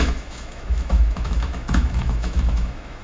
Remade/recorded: remade